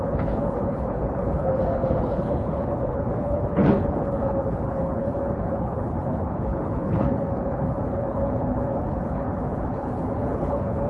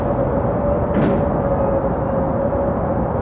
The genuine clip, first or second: second